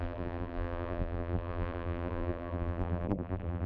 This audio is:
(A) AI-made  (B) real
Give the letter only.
A